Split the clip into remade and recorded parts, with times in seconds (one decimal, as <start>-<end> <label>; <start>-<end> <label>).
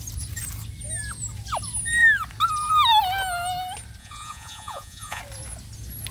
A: 0.0-4.0 recorded; 4.0-5.2 remade; 5.2-6.1 recorded